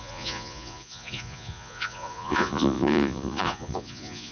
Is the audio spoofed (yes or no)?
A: yes